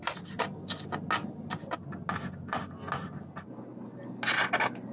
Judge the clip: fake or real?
real